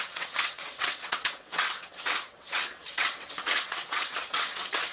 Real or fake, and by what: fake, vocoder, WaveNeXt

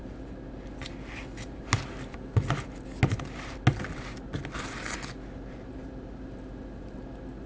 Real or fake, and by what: real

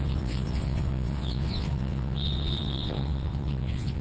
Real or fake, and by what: fake, vocoder, WaveNeXt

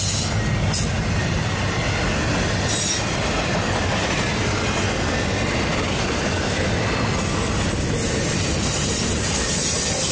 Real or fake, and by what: real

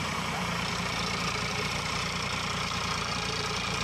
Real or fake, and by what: fake, vocoder, BigVGAN v2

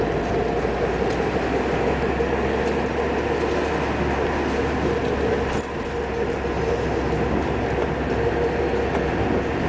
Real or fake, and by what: real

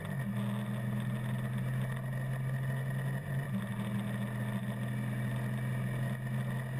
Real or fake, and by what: real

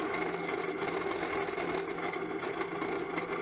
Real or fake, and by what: real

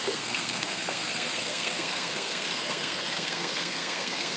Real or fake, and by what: fake, codec, SNAC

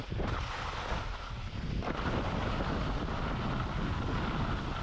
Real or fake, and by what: real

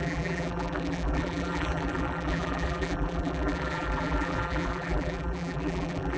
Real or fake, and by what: fake, vocoder, BigVGAN v2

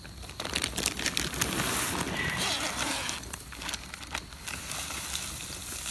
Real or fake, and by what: real